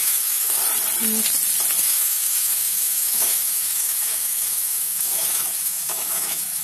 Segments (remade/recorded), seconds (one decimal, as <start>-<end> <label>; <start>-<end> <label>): 0.0-0.6 remade; 0.6-1.8 recorded; 1.8-6.6 remade